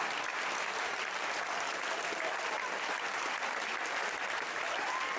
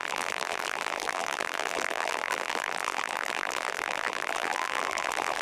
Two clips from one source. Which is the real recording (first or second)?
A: first